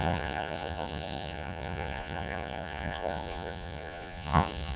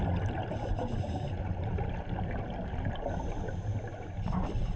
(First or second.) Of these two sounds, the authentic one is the second